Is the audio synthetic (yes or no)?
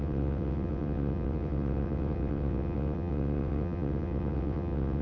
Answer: yes